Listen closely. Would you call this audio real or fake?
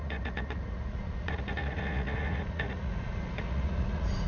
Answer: fake